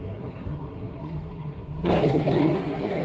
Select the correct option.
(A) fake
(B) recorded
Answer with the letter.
A